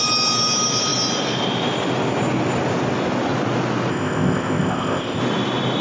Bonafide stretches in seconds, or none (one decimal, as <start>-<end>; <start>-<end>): 0.0-3.9; 5.2-5.8